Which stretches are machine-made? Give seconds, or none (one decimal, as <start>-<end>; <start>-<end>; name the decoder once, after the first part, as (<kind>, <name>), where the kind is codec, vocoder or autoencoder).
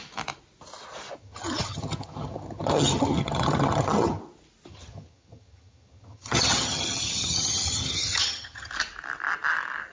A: 1.2-4.2 (vocoder, HiFi-GAN); 4.7-8.7